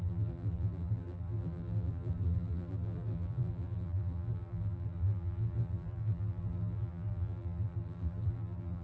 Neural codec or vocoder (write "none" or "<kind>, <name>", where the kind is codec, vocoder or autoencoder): vocoder, BigVGAN v2